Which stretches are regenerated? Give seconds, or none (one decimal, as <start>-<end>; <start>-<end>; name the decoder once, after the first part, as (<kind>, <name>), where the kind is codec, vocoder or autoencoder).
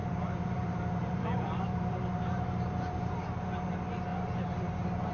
0.0-3.1 (vocoder, BigVGAN v2); 4.1-5.1